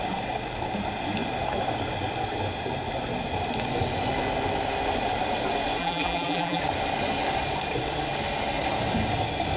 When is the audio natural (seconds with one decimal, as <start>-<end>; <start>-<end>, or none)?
0.0-5.8; 6.6-9.6